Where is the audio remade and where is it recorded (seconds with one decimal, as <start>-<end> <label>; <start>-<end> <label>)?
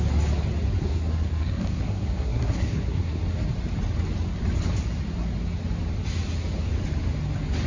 0.0-0.8 recorded; 0.8-3.2 remade; 3.2-7.7 recorded